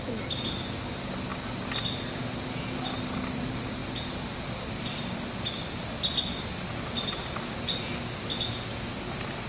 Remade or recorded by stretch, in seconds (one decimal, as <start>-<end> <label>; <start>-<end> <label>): 0.0-9.5 recorded